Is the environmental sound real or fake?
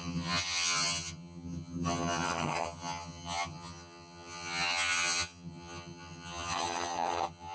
fake